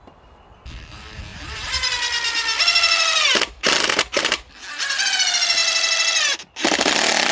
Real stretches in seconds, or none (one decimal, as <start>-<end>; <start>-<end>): 0.0-1.3; 1.9-3.9; 4.5-7.3